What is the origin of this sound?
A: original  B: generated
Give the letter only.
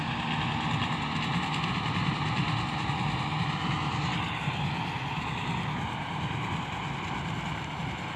A